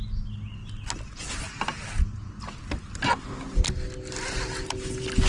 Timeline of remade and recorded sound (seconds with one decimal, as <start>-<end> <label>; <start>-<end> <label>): 0.0-5.3 recorded